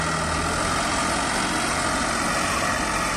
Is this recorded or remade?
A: recorded